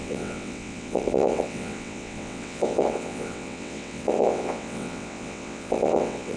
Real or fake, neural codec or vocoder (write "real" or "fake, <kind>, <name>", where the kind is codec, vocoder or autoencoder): fake, vocoder, WaveNeXt